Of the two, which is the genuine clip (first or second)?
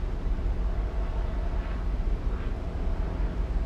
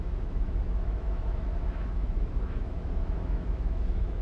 first